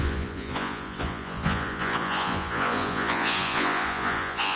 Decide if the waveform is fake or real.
fake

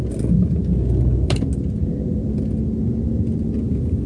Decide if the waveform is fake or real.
real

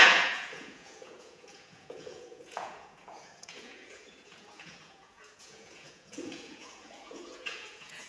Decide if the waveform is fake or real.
fake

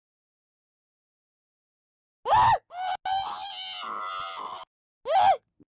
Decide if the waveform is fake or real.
real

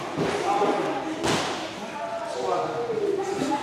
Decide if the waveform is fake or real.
real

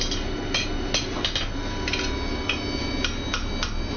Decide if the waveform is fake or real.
real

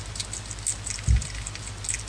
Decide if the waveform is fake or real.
real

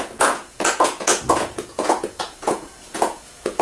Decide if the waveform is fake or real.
fake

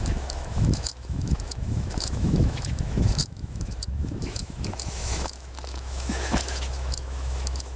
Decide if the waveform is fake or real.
fake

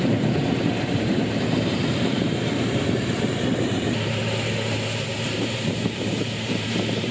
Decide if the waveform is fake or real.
fake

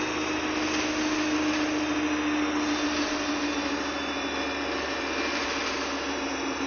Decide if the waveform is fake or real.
real